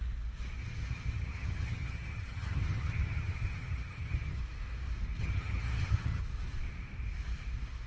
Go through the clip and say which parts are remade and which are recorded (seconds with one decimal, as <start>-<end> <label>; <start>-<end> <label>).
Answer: 0.0-0.6 recorded; 0.6-4.4 remade; 4.4-5.2 recorded; 5.2-6.2 remade; 6.2-7.9 recorded